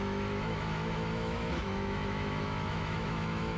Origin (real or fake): fake